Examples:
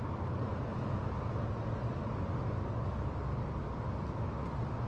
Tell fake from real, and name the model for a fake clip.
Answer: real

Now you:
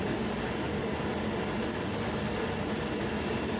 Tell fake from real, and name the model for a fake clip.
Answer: real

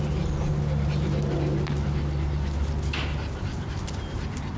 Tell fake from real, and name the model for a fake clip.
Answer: real